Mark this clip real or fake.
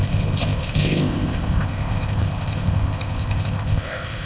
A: fake